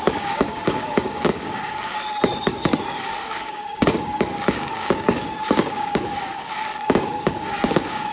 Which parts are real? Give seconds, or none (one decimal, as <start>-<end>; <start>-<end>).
none